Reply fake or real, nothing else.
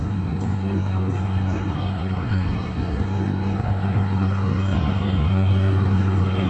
fake